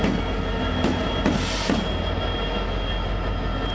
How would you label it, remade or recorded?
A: recorded